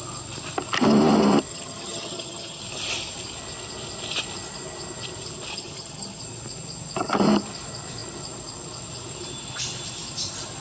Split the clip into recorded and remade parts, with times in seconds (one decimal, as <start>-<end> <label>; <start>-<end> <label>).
0.0-1.5 recorded; 1.5-2.6 remade; 2.6-5.5 recorded; 5.5-6.2 remade; 6.2-10.6 recorded